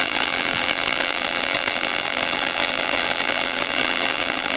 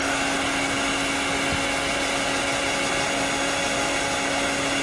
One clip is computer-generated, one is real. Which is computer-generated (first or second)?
first